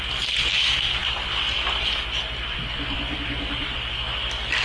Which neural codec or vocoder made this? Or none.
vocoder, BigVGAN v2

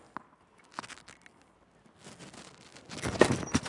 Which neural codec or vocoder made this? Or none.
none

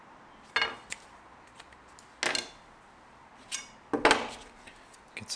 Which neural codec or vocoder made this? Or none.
none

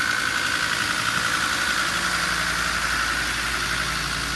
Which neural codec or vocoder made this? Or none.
none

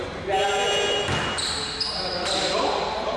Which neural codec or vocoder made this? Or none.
none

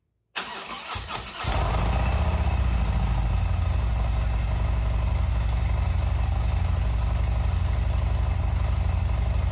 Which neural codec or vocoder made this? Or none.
none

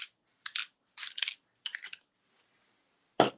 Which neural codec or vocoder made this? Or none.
none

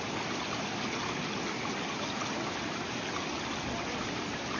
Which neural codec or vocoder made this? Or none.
none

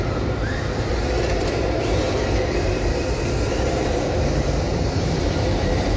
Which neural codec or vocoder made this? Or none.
vocoder, BigVGAN v2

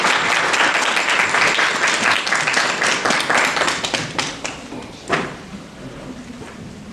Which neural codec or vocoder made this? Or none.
vocoder, BigVGAN v2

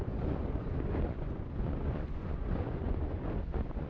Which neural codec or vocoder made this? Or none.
vocoder, Vocos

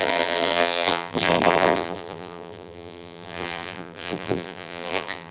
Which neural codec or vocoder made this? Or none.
vocoder, BigVGAN v2